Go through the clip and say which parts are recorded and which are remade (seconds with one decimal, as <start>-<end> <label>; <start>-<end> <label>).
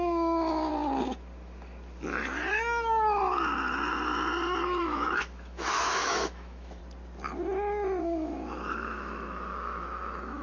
0.0-0.7 remade; 0.7-4.8 recorded; 4.8-6.8 remade; 6.8-8.0 recorded; 8.0-10.4 remade